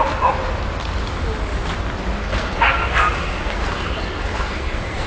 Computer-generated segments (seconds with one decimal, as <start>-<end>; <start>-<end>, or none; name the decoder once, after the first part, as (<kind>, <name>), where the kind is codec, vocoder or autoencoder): 2.2-5.1 (codec, SNAC)